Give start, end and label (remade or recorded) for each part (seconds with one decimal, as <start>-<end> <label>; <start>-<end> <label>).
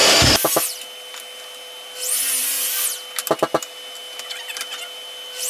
0.0-5.5 recorded